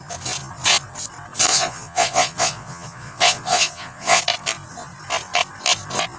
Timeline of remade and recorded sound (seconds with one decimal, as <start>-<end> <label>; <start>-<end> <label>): 0.0-1.5 recorded; 1.5-4.2 remade; 4.2-6.2 recorded